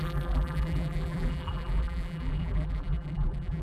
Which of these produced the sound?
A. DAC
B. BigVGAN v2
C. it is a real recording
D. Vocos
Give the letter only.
B